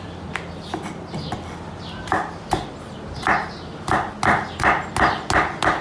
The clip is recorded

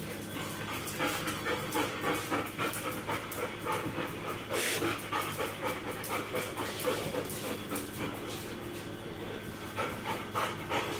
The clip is recorded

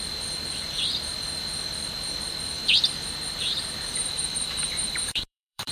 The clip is remade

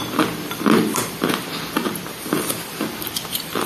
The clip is remade